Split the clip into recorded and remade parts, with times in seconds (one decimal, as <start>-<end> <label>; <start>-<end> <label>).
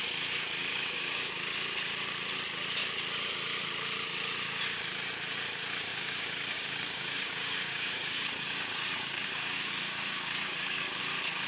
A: 0.0-0.7 recorded; 0.7-1.3 remade; 1.3-5.9 recorded; 5.9-11.0 remade; 11.0-11.5 recorded